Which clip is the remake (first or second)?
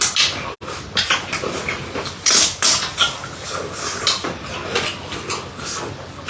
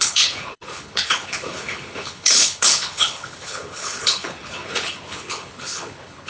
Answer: second